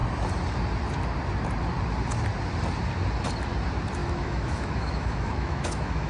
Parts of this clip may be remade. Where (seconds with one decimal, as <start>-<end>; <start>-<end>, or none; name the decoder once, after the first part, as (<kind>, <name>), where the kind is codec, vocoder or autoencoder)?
4.0-6.1 (autoencoder, DAC-VAE)